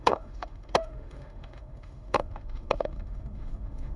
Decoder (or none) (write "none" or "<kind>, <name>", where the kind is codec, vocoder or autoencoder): autoencoder, DAC-VAE